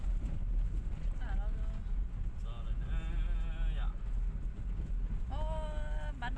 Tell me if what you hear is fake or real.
real